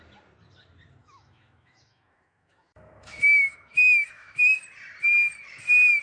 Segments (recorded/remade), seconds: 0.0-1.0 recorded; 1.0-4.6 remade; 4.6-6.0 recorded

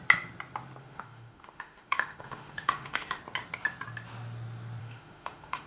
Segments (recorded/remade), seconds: 0.0-0.8 recorded; 0.8-3.2 remade; 3.2-4.8 recorded; 4.8-5.7 remade

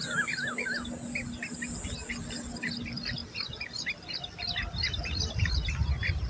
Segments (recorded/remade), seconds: 0.0-6.3 recorded

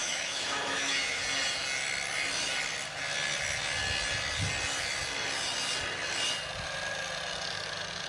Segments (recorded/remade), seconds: 0.0-1.2 remade; 1.2-8.1 recorded